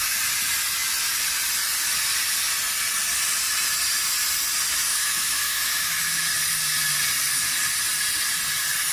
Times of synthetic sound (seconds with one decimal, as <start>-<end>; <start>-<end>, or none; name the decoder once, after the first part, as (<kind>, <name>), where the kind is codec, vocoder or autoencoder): 4.9-6.1 (autoencoder, DAC-VAE)